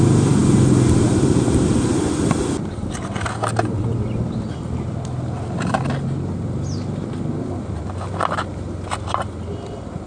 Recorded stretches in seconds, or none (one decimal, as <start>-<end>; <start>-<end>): 0.0-10.1